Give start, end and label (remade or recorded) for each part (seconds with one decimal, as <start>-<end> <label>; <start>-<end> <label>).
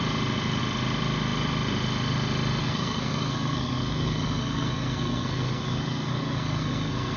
0.0-2.6 recorded; 2.6-7.2 remade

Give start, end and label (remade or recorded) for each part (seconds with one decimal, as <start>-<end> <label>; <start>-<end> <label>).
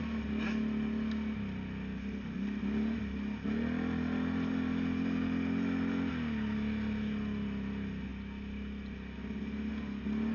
0.0-10.3 recorded